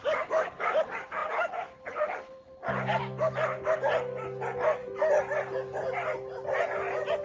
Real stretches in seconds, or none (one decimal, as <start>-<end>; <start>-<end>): none

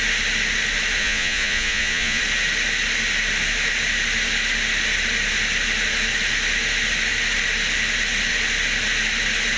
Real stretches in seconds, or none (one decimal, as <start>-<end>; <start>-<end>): 0.0-1.0; 2.2-9.6